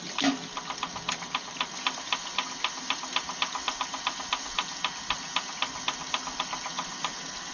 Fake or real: real